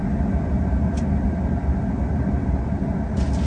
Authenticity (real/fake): real